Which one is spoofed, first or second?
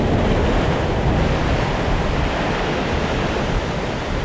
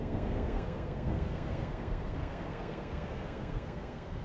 second